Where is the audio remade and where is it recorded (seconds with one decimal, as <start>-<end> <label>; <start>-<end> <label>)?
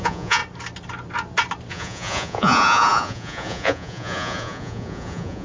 0.0-0.4 remade; 0.4-1.7 recorded; 1.7-5.4 remade